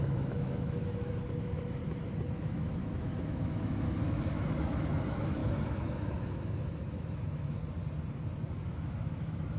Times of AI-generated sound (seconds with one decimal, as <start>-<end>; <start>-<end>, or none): 0.0-1.8; 2.4-7.6; 8.7-9.6